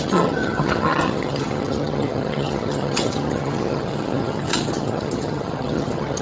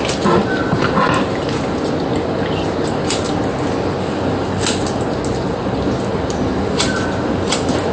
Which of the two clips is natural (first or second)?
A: second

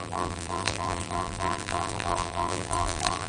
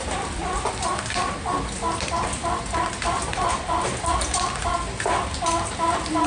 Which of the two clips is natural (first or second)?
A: second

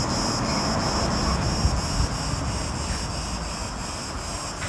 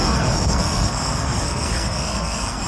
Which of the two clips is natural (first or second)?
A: first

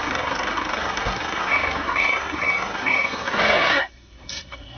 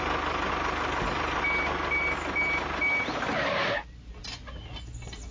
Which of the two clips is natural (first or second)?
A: second